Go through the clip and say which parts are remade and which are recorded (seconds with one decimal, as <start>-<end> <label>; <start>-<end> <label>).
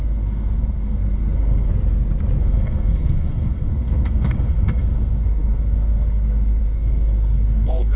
0.0-1.7 remade; 1.7-2.4 recorded; 2.4-8.0 remade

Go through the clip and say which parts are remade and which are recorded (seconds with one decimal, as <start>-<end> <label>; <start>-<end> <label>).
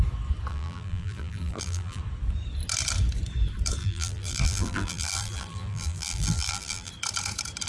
0.0-0.5 recorded; 0.5-2.0 remade; 2.0-3.8 recorded; 3.8-6.9 remade; 6.9-7.7 recorded